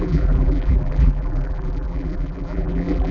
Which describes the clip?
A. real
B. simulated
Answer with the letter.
B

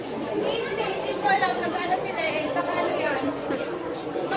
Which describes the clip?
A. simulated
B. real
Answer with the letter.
A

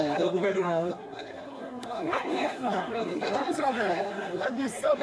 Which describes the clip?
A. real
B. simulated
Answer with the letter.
B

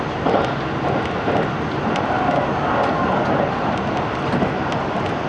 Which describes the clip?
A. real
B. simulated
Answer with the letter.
A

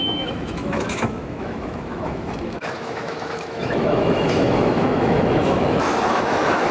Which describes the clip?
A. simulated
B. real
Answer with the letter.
A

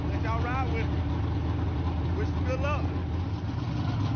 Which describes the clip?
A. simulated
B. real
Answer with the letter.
B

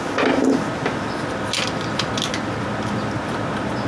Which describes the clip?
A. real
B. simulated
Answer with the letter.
A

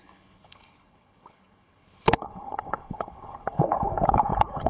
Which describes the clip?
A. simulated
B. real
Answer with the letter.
A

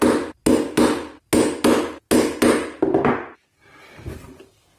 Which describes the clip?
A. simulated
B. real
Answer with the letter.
B